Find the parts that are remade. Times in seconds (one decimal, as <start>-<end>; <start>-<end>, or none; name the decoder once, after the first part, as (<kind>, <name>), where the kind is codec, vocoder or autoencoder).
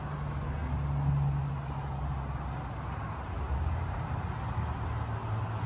none